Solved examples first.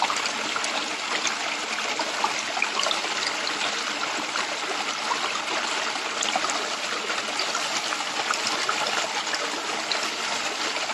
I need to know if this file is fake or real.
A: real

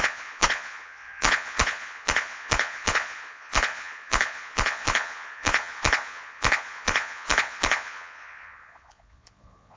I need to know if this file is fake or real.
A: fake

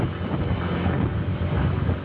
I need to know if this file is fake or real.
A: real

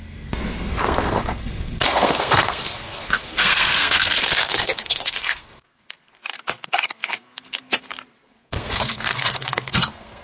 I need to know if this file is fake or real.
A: fake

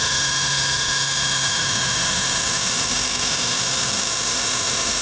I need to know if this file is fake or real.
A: fake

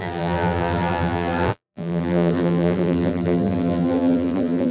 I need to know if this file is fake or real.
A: fake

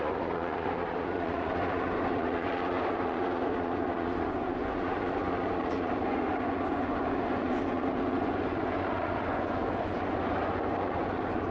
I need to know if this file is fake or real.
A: fake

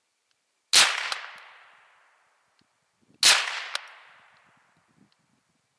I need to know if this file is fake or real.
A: real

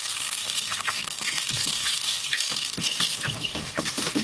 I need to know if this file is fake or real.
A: fake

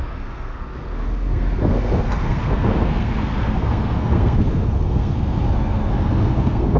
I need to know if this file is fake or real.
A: fake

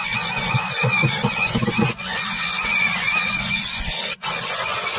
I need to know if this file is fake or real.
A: fake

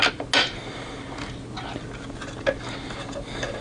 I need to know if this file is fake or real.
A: real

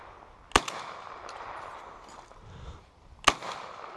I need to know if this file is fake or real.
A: real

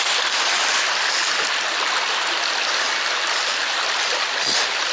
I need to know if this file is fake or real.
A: real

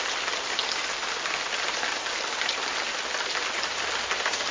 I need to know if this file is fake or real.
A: real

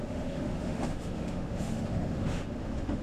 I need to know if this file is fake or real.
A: fake